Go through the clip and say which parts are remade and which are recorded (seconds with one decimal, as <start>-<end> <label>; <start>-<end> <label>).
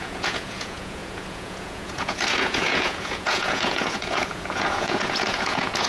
0.0-5.9 remade